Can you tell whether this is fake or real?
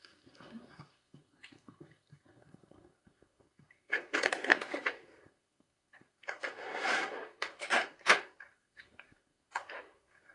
fake